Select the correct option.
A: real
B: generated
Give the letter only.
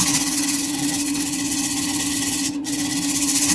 B